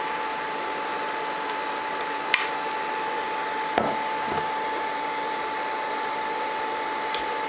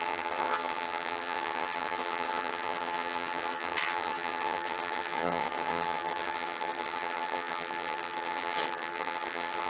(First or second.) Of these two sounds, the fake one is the second